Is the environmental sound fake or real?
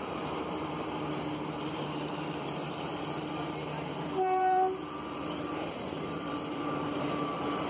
fake